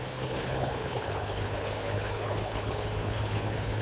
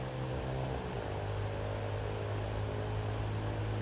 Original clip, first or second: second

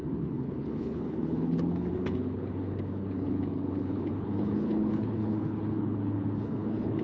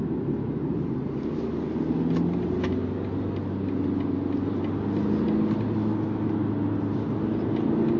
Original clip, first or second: second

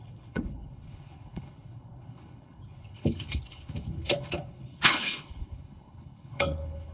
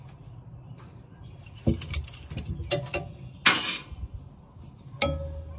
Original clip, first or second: second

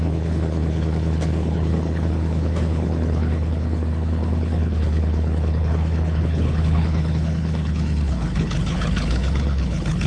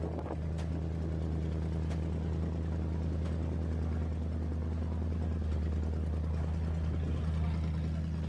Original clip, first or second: second